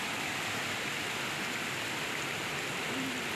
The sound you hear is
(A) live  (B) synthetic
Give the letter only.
A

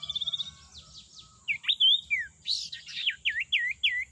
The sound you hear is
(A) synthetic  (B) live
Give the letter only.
B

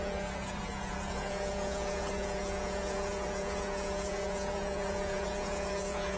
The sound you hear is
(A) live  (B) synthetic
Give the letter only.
B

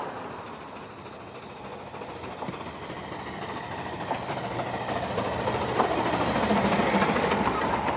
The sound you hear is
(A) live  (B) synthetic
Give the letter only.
A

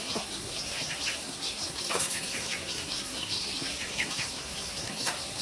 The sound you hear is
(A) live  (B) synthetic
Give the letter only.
B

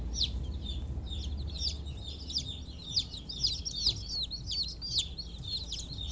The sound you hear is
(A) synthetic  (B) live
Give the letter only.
B